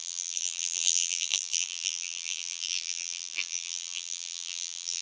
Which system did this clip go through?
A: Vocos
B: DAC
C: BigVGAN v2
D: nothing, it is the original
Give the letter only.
C